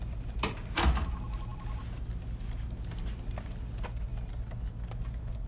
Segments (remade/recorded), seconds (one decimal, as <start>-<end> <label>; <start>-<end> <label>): 0.0-5.5 recorded